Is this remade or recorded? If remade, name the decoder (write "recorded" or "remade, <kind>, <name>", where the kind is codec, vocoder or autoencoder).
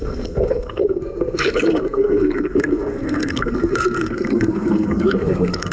remade, codec, SNAC